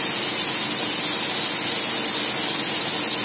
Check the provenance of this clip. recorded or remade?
recorded